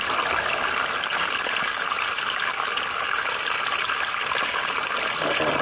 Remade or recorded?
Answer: recorded